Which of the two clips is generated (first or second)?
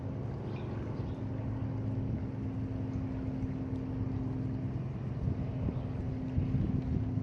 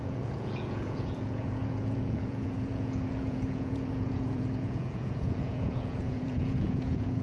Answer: second